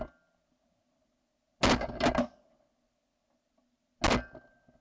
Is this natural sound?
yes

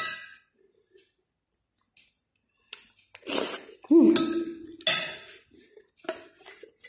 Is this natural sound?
yes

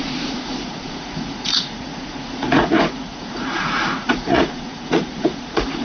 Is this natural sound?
no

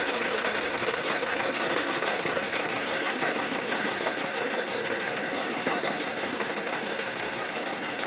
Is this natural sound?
no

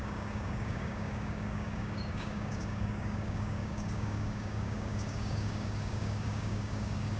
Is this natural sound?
no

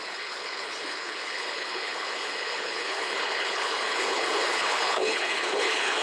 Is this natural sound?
no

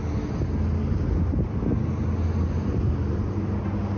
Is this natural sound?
yes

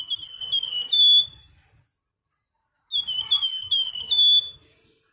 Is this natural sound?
yes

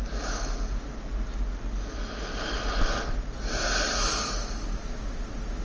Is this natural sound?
yes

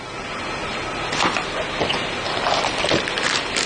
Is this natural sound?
yes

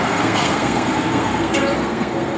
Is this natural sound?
no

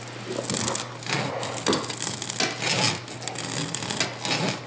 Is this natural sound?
yes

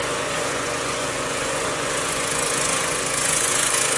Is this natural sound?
no